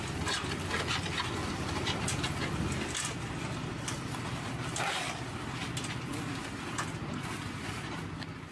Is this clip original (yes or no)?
no